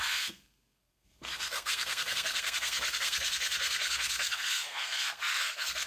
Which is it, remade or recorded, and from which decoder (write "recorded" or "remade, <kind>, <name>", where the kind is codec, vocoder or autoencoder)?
remade, codec, SNAC